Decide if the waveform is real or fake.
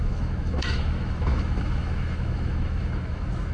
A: fake